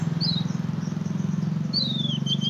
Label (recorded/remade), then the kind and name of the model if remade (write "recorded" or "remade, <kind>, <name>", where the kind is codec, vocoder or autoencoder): recorded